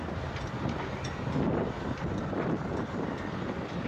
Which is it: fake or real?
real